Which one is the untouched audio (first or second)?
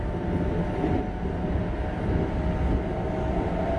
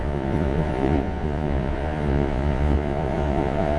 first